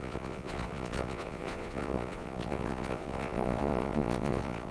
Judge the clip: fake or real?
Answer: fake